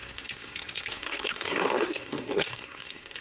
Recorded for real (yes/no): no